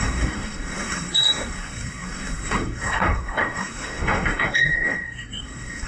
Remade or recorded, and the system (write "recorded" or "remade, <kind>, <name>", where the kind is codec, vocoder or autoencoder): remade, codec, SNAC